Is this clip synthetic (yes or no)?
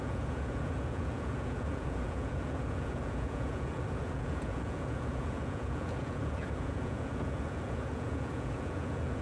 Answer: yes